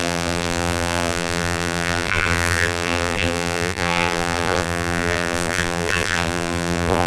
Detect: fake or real fake